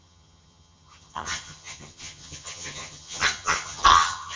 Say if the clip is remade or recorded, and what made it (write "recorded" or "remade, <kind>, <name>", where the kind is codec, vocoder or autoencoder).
remade, vocoder, HiFi-GAN